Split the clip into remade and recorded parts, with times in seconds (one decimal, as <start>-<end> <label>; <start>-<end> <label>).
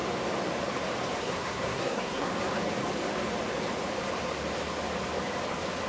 0.0-1.2 recorded; 1.2-2.3 remade; 2.3-5.9 recorded